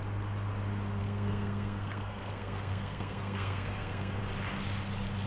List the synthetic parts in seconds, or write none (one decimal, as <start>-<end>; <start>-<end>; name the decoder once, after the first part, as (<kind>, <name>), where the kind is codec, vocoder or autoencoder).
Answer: 1.0-4.2 (codec, SNAC)